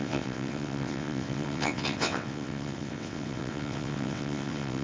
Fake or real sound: fake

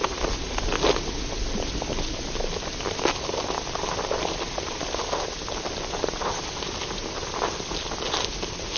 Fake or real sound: real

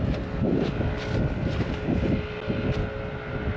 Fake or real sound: real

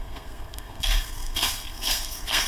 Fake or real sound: fake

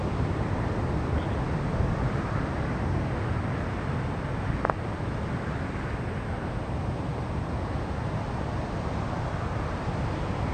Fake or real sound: real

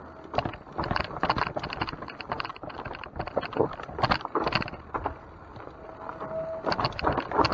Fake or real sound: real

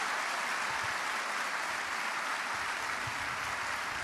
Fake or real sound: real